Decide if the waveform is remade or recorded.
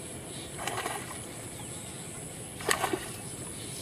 recorded